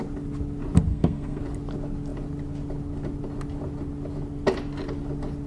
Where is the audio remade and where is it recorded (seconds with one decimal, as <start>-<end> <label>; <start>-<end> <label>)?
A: 0.0-0.9 recorded; 0.9-1.4 remade; 1.4-5.5 recorded